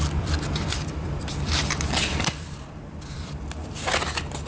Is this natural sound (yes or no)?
no